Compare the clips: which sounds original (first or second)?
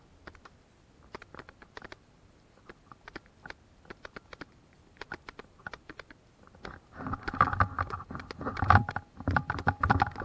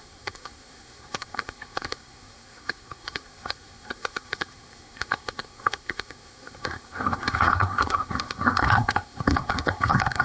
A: first